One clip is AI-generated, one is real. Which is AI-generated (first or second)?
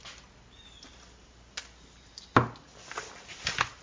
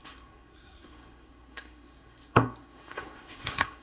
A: second